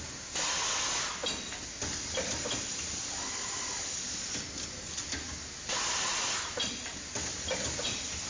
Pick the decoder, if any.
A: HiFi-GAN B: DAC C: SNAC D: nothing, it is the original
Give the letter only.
D